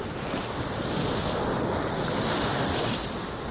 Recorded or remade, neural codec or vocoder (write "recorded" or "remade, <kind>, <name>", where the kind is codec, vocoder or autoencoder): recorded